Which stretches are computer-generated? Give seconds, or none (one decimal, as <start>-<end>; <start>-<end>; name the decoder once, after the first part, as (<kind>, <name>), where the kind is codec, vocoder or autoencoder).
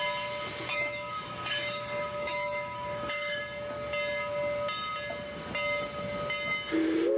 0.7-3.4 (autoencoder, DAC-VAE)